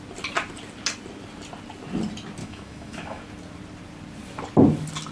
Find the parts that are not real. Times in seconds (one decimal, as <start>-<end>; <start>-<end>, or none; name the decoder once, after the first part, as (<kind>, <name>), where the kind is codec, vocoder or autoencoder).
2.4-3.2 (autoencoder, DAC-VAE)